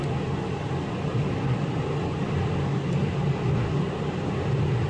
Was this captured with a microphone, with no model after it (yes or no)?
yes